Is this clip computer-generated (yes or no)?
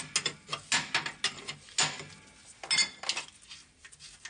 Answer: no